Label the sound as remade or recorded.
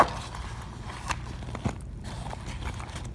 recorded